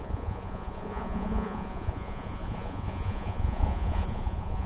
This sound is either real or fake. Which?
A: fake